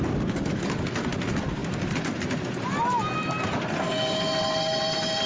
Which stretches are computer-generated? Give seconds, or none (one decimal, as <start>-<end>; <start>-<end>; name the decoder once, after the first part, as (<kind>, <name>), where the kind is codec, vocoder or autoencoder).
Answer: none